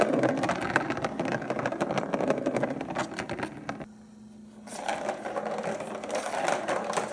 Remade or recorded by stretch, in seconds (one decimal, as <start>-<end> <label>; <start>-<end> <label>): 0.0-7.1 recorded